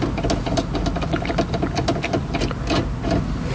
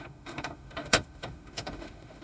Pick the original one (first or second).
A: first